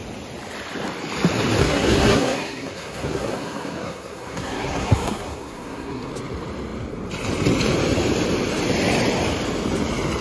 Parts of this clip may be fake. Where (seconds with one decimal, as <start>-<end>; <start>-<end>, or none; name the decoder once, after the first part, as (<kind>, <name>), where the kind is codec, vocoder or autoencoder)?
1.6-6.1 (codec, SNAC)